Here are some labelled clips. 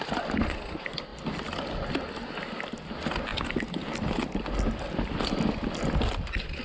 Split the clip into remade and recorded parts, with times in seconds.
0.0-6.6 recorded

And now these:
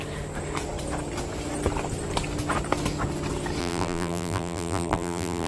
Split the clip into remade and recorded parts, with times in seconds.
0.0-3.6 recorded; 3.6-5.5 remade

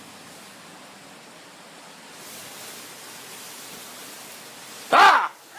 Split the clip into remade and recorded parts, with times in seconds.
0.0-1.9 recorded; 1.9-5.1 remade; 5.1-5.6 recorded

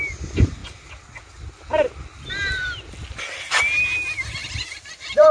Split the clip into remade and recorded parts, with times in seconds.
0.0-4.4 recorded; 4.4-5.3 remade

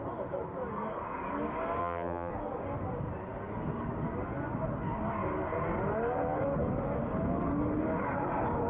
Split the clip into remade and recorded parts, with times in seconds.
0.0-1.8 recorded; 1.8-2.3 remade; 2.3-8.7 recorded

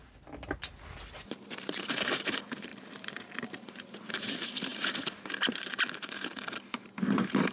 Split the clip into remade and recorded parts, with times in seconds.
0.0-1.6 recorded; 1.6-7.5 remade

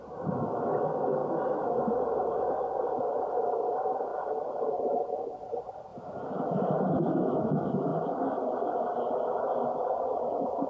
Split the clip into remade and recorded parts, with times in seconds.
0.0-10.7 recorded

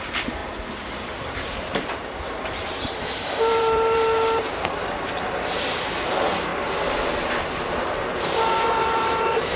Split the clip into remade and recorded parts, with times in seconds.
0.0-6.5 remade; 6.5-7.7 recorded; 7.7-9.6 remade